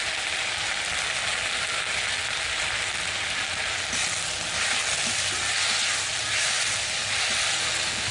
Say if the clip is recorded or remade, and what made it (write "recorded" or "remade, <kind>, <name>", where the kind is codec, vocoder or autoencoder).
recorded